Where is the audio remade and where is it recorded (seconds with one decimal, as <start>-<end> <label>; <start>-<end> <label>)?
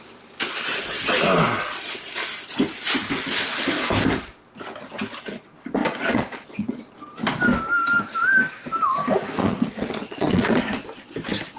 0.0-5.8 recorded; 5.8-6.9 remade; 6.9-9.4 recorded; 9.4-10.6 remade; 10.6-11.6 recorded